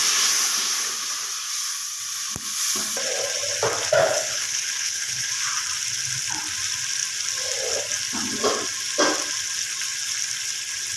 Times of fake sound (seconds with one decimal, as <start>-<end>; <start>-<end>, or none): 4.0-5.3